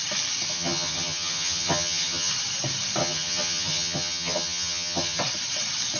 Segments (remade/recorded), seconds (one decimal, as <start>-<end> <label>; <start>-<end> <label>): 0.0-0.5 recorded; 0.5-2.3 remade; 2.3-3.0 recorded; 3.0-5.2 remade; 5.2-6.0 recorded